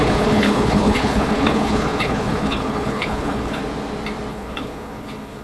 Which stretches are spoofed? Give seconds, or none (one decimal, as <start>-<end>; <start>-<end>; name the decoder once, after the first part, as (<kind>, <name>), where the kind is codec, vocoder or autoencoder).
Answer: 0.0-3.6 (codec, HILCodec); 4.3-5.4